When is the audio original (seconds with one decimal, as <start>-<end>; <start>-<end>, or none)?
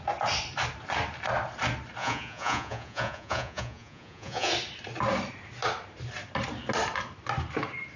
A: 0.0-2.0; 4.5-8.0